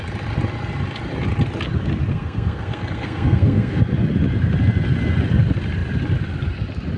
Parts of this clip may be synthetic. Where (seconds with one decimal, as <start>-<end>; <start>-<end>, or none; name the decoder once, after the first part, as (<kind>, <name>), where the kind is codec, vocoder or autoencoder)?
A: 2.1-3.8 (codec, SNAC)